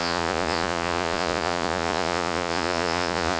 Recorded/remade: remade